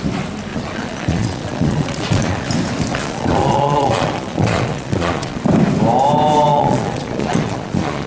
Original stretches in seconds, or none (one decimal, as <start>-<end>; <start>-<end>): 0.0-0.5; 2.5-2.9; 5.4-6.5